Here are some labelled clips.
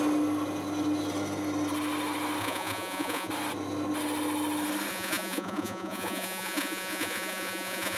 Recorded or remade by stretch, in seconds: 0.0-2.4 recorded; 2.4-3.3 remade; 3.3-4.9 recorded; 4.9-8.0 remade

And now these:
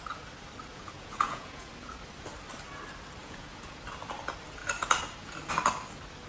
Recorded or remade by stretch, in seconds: 0.0-0.7 recorded; 0.7-1.7 remade; 1.7-3.2 recorded; 3.2-3.8 remade; 3.8-6.3 recorded

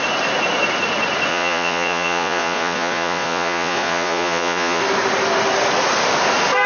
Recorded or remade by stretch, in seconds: 0.0-1.3 recorded; 1.3-4.8 remade; 4.8-6.7 recorded